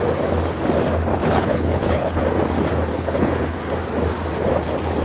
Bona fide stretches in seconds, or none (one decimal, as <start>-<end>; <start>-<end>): 0.0-1.1; 2.2-2.9; 3.6-5.0